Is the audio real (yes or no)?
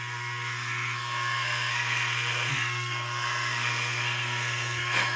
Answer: no